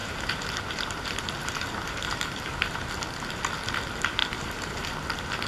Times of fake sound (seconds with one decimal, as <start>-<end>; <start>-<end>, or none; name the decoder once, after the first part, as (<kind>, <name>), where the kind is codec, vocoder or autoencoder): 0.0-2.9 (vocoder, BigVGAN v2); 4.2-4.9